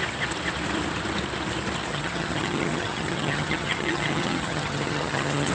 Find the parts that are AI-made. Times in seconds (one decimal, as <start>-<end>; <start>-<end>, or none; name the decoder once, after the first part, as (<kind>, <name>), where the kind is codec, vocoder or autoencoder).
1.9-5.5 (vocoder, HiFi-GAN)